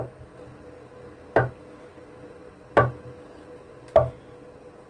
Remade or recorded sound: recorded